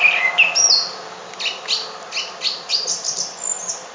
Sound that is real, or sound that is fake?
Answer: real